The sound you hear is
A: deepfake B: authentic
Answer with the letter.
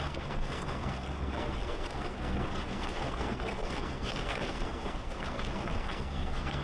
A